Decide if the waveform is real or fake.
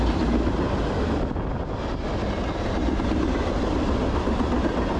real